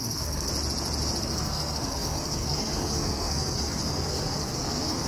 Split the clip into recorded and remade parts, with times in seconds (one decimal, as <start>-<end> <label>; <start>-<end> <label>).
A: 0.0-0.5 remade; 0.5-1.2 recorded; 1.2-5.1 remade